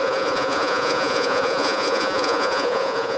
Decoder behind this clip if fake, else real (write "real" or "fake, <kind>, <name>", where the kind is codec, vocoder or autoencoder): fake, vocoder, Vocos